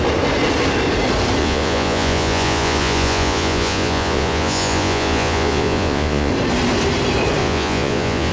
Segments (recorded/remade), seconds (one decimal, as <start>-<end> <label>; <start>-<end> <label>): 0.0-1.4 recorded; 1.4-6.3 remade; 6.3-7.4 recorded; 7.4-8.3 remade